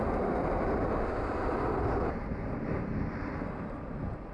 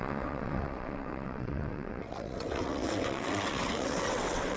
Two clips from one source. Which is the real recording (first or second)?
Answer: first